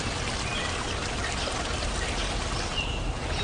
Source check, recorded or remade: recorded